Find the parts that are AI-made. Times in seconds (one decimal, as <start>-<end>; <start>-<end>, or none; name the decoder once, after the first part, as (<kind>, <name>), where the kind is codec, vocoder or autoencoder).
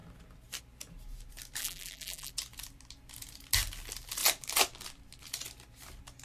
1.6-2.3 (vocoder, BigVGAN v2)